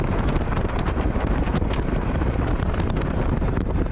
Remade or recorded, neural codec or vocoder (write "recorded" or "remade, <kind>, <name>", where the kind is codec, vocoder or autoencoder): remade, vocoder, BigVGAN v2